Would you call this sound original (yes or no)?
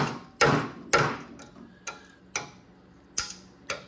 yes